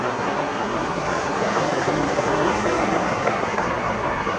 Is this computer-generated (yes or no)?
yes